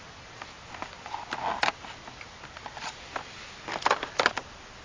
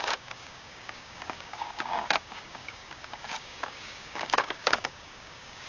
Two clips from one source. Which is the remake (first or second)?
second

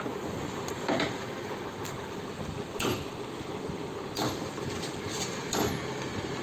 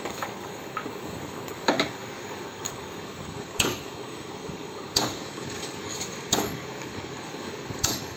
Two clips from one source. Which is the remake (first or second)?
second